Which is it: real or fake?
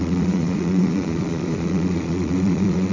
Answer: fake